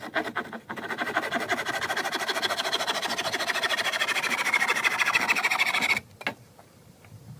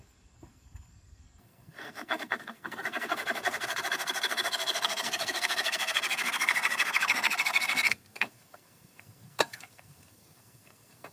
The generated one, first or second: second